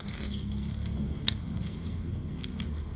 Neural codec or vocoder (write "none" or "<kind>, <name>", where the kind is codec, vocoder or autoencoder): codec, SNAC